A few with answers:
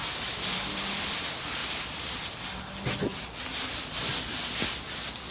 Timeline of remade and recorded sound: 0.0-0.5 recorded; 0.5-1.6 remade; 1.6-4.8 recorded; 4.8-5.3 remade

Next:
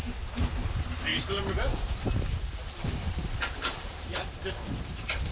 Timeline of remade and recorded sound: 0.0-1.1 recorded; 1.1-4.3 remade; 4.3-5.3 recorded

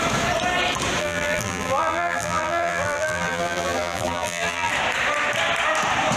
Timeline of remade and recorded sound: 0.0-1.0 recorded; 1.0-4.7 remade; 4.7-6.2 recorded